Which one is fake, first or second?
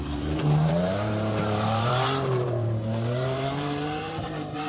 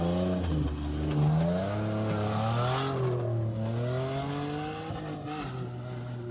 first